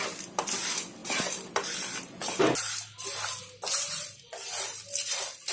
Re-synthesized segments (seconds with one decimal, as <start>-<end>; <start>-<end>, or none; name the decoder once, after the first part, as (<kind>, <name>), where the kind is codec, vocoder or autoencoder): none